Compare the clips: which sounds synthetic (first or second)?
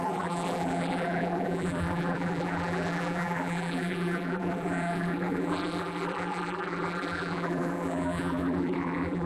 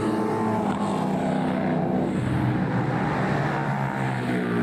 first